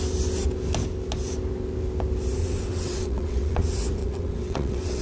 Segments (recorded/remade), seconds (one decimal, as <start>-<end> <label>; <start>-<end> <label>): 0.0-2.4 recorded; 2.4-3.6 remade; 3.6-4.0 recorded; 4.0-5.0 remade